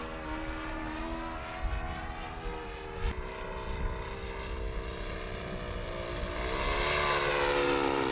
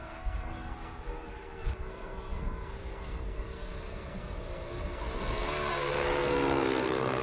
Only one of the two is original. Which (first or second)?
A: first